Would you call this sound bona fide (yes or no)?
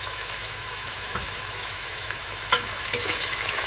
no